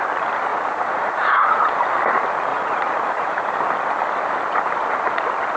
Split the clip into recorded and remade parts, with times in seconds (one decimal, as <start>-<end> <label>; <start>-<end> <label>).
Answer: 0.0-0.5 recorded; 0.5-1.7 remade; 1.7-2.5 recorded; 2.5-3.5 remade; 3.5-5.6 recorded